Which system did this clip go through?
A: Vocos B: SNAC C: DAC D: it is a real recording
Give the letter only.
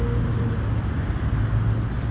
D